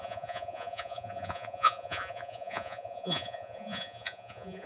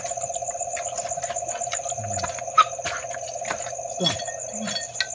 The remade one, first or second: first